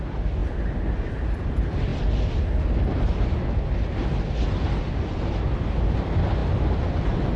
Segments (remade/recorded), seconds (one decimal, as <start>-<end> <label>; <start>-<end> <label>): 0.0-7.4 recorded